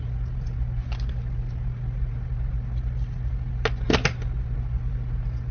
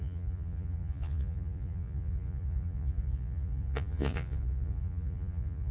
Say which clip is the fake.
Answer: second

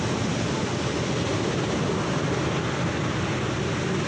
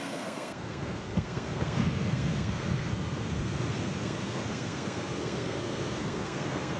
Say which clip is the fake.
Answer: second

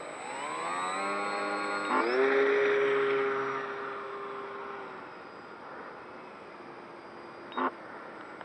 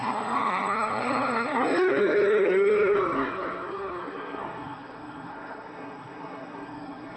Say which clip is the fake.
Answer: second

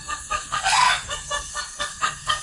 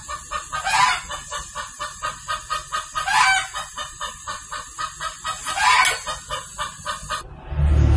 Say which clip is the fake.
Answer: first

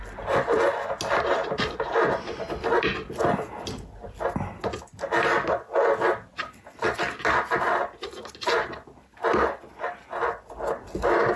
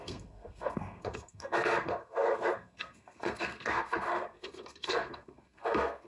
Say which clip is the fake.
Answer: second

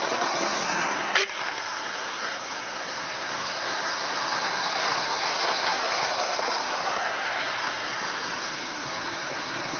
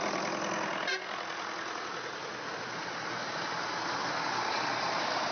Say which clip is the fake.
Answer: first